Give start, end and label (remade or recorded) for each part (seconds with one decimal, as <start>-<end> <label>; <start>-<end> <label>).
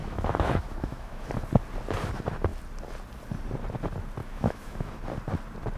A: 0.0-1.3 remade; 1.3-4.2 recorded; 4.2-5.0 remade; 5.0-5.8 recorded